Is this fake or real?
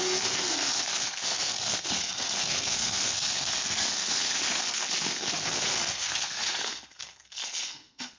fake